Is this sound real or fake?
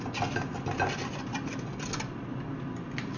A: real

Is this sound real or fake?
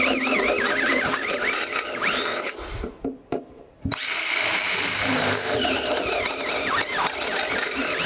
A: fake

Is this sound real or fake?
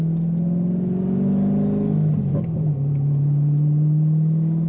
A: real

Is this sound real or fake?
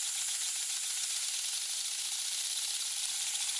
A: fake